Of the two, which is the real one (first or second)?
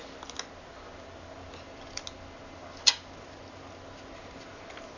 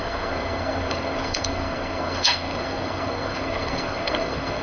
first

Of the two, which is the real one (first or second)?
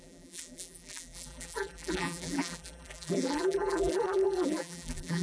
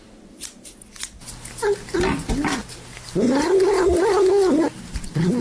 second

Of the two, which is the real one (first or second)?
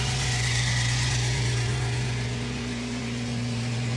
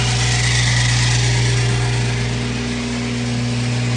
second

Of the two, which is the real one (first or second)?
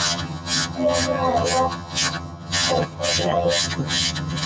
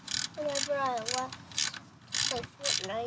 second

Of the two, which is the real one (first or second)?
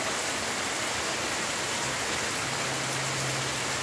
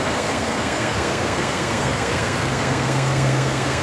first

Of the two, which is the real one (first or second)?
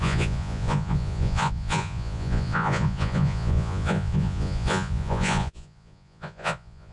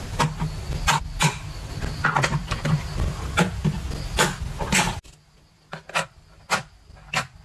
second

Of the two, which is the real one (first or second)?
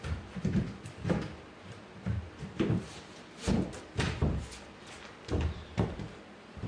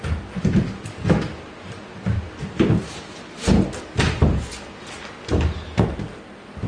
second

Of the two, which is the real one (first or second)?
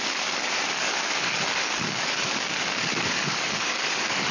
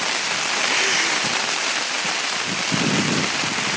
second